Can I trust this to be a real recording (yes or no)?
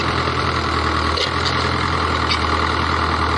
yes